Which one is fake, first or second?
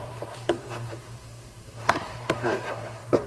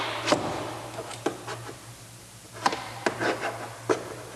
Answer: first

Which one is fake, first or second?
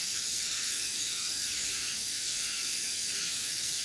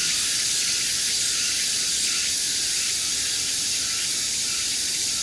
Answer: first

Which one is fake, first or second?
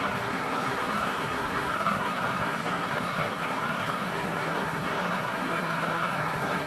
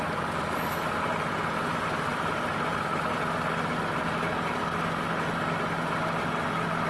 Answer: first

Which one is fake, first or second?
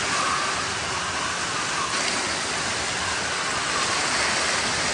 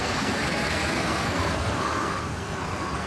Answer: second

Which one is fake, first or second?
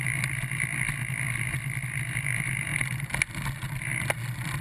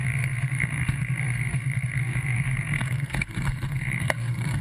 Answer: second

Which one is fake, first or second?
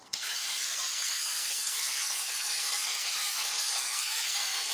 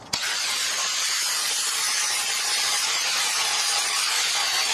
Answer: first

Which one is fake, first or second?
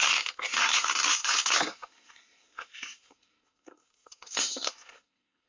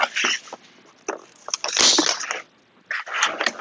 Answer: first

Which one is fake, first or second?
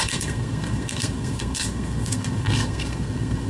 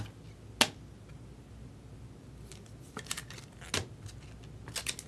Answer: first